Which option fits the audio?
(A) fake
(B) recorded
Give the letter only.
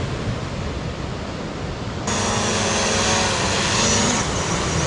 B